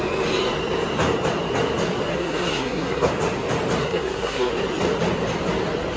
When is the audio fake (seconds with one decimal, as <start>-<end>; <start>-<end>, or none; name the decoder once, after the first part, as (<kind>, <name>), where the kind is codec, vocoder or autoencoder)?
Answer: 2.1-3.1 (codec, SNAC); 3.8-4.5

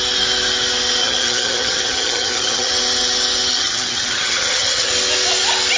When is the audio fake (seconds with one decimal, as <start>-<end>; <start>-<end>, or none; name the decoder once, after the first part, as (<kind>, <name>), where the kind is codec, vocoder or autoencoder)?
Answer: 1.0-2.7 (vocoder, HiFi-GAN); 3.5-4.9